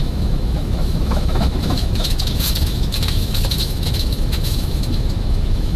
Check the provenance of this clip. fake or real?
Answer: fake